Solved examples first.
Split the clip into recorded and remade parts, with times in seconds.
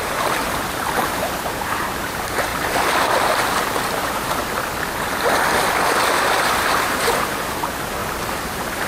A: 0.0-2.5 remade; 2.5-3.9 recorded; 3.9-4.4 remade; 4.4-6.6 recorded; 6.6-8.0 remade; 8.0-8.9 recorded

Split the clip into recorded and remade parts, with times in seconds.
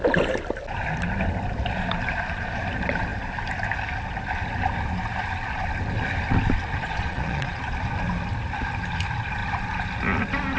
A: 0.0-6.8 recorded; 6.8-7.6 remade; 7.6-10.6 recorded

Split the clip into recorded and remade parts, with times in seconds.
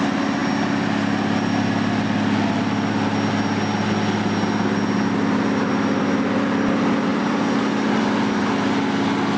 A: 0.0-9.4 recorded